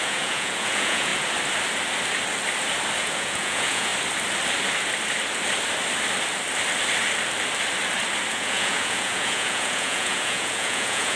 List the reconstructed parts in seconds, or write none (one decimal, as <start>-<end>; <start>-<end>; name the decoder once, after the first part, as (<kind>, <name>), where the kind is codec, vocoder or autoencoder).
0.0-1.1 (vocoder, Vocos); 3.0-3.9; 8.3-11.2

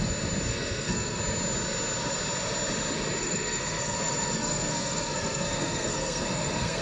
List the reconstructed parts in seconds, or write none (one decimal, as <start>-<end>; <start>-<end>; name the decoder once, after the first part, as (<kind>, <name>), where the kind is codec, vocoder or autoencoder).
0.5-1.2 (codec, SNAC); 3.2-6.8

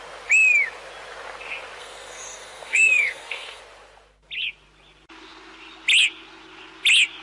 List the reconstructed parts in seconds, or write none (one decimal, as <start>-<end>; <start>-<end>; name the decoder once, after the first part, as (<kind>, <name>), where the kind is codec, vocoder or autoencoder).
1.8-3.6 (codec, SNAC)

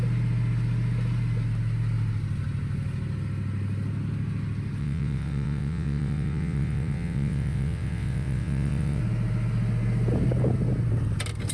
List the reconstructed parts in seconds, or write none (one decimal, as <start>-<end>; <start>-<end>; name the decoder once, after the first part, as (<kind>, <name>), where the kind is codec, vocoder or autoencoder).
4.8-9.0 (vocoder, WaveNeXt)

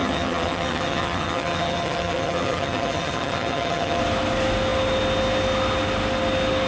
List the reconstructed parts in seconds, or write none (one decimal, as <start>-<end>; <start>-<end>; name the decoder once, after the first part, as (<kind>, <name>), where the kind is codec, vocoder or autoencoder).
0.0-4.0 (vocoder, HiFi-GAN)

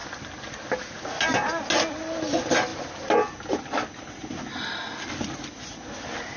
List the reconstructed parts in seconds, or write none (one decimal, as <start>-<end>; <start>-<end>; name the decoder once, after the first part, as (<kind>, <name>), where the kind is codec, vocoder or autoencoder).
none